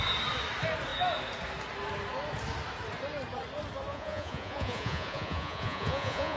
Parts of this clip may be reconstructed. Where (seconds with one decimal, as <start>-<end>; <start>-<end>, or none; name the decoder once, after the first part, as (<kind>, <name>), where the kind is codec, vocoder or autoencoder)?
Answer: 3.9-6.4 (vocoder, Vocos)